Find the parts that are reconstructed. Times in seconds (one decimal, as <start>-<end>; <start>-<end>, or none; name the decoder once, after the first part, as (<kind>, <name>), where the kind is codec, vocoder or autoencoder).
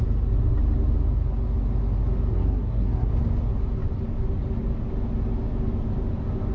2.3-3.1 (codec, SNAC)